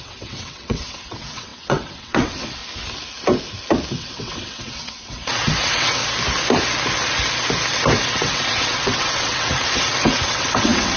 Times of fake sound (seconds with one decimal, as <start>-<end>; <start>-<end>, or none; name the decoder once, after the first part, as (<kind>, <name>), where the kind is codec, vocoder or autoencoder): 0.0-2.6 (vocoder, WaveNeXt); 3.9-6.0; 8.1-11.0